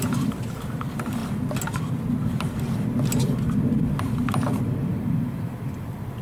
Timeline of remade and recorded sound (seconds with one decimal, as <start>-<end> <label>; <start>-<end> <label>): 0.0-1.2 remade; 1.2-4.9 recorded; 4.9-6.2 remade